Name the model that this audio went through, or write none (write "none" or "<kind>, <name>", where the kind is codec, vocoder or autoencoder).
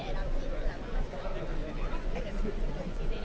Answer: vocoder, Vocos